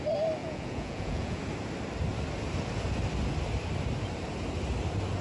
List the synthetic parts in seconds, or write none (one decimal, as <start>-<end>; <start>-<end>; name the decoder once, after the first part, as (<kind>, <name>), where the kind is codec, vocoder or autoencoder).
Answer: 0.4-1.4 (vocoder, Vocos)